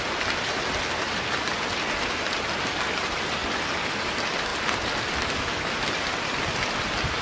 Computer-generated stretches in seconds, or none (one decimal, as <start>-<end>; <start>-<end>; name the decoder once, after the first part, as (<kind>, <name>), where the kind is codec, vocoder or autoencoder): 0.0-1.7 (vocoder, BigVGAN v2); 2.3-3.4; 4.0-4.5; 6.0-7.2